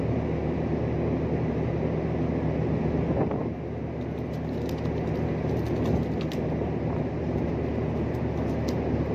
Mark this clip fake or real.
real